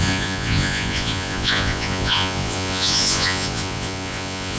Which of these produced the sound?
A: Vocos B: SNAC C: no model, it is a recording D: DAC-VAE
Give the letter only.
A